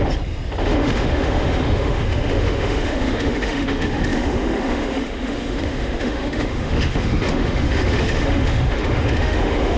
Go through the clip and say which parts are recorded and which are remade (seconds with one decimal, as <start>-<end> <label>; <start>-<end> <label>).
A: 0.0-0.6 recorded; 0.6-9.8 remade

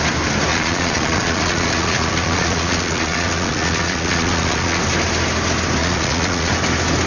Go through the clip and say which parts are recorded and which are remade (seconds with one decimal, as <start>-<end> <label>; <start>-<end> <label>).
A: 0.0-0.5 recorded; 0.5-4.8 remade; 4.8-5.8 recorded; 5.8-6.5 remade; 6.5-7.1 recorded

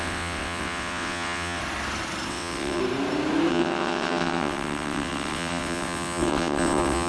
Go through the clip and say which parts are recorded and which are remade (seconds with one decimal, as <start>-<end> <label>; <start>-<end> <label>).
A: 0.0-1.6 remade; 1.6-2.3 recorded; 2.3-2.8 remade; 2.8-3.5 recorded; 3.5-7.1 remade

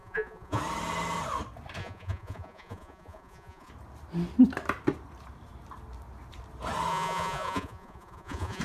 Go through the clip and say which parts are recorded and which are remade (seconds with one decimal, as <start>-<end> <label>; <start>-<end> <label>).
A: 0.0-0.6 remade; 0.6-1.8 recorded; 1.8-3.7 remade; 3.7-6.9 recorded; 6.9-8.6 remade

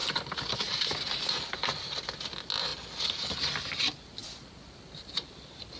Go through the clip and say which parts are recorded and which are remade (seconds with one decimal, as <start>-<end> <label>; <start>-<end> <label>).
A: 0.0-5.8 recorded